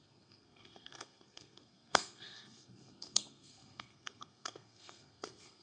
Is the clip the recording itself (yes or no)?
no